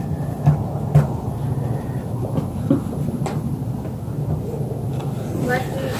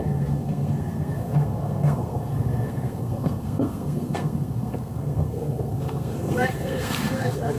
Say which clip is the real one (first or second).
first